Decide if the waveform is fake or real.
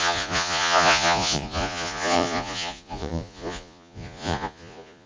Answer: fake